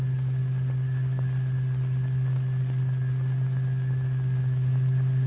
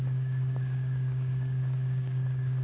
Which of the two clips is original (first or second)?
first